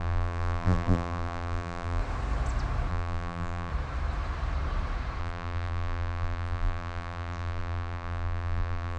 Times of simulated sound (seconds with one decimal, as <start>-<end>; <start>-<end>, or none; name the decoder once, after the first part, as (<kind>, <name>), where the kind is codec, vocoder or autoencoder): 0.0-2.0 (vocoder, BigVGAN v2); 2.9-3.7; 5.2-9.0